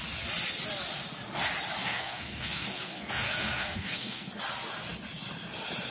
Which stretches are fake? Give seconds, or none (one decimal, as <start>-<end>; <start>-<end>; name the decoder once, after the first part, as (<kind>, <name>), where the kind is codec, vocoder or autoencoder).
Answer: 1.8-4.3 (codec, SNAC)